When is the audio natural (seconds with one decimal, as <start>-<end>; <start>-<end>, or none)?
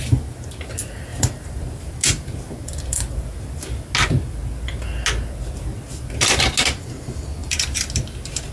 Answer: 0.0-1.1; 1.9-7.4; 7.9-8.5